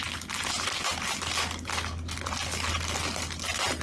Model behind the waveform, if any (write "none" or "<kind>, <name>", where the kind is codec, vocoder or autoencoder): none